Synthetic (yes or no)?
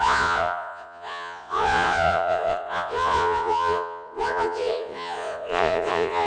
yes